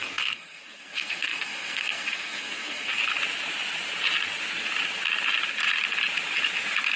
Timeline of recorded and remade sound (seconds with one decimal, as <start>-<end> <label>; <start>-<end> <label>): 0.0-3.0 remade; 3.0-7.0 recorded